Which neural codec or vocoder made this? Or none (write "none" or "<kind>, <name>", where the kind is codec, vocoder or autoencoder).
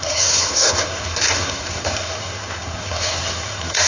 codec, SNAC